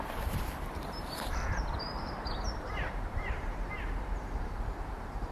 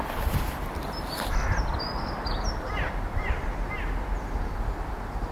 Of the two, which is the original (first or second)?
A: second